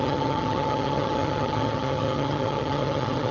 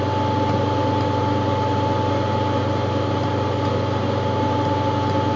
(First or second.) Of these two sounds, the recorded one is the second